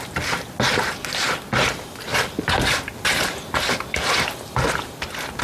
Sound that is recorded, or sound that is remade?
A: recorded